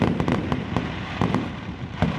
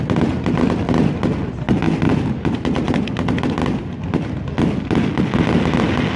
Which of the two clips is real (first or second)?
second